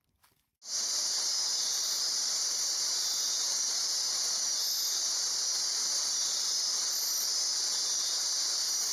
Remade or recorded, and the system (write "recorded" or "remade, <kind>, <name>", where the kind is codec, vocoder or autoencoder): recorded